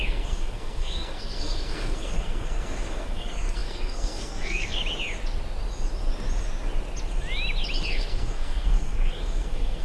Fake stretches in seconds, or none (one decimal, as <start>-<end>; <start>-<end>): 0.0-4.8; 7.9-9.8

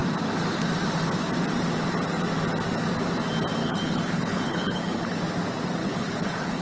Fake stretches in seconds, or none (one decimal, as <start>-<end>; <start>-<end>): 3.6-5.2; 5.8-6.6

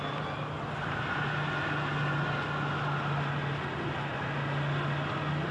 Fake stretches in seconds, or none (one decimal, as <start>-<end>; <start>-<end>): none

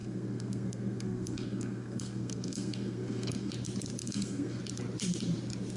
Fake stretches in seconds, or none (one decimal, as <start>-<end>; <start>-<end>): 0.0-3.5; 4.0-4.6

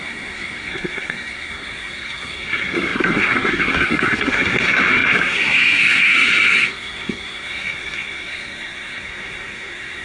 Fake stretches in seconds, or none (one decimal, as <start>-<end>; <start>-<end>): 0.0-10.0

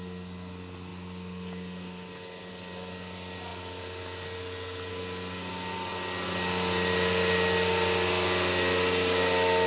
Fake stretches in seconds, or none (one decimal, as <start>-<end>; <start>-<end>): none